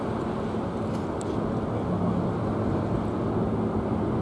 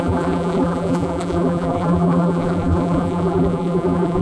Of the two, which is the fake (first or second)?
second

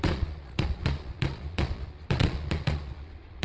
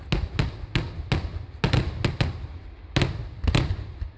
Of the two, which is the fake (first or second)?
first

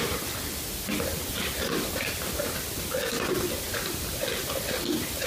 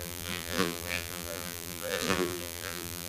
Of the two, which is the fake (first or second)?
second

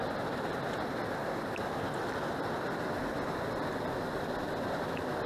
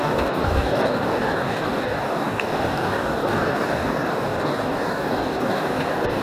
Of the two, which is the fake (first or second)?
second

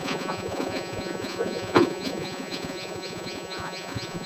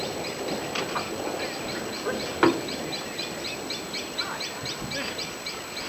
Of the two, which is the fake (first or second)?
first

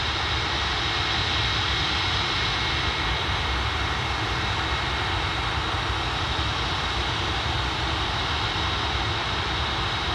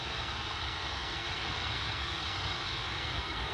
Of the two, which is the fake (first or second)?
second